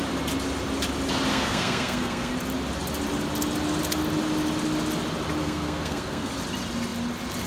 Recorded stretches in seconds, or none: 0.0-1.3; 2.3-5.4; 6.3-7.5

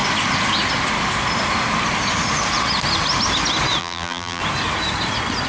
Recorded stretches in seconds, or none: 0.0-3.8; 4.4-5.5